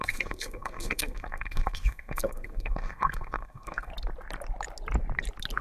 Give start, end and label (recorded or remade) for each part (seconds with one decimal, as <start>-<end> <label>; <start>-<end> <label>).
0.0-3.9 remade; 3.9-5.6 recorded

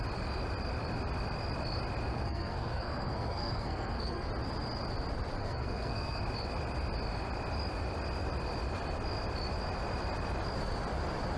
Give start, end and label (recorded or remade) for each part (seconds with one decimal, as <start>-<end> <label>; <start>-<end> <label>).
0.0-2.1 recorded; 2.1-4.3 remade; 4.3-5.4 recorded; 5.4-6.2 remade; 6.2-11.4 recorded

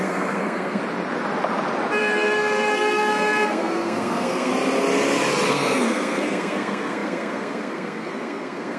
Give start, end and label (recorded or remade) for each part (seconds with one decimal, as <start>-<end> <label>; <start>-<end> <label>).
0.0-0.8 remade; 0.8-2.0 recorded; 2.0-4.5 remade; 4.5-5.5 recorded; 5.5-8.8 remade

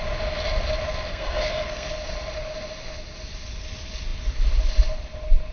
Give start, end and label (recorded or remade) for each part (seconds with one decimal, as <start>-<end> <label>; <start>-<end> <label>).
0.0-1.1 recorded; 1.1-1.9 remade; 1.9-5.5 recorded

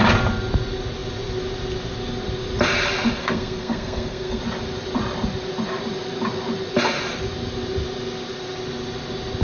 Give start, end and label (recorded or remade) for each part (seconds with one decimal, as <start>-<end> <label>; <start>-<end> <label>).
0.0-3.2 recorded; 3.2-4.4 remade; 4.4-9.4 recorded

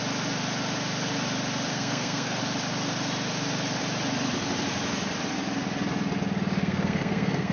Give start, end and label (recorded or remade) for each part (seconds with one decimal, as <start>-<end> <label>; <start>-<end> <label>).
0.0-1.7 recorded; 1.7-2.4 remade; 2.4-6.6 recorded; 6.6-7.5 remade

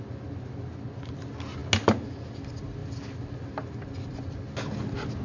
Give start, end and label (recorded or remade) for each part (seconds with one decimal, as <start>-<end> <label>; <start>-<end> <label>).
0.0-5.2 recorded